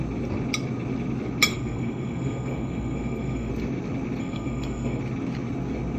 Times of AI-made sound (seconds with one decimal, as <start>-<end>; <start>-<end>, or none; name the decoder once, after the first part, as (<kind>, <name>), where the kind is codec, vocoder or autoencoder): 1.5-3.5 (codec, SNAC); 4.2-5.0